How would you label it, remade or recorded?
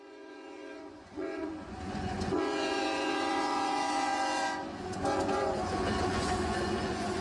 remade